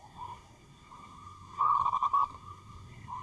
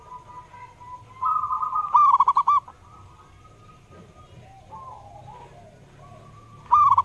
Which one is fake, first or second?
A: first